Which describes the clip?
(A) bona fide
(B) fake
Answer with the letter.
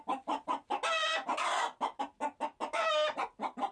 A